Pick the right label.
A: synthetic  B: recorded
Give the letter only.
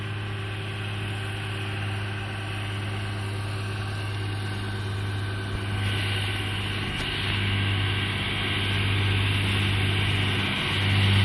B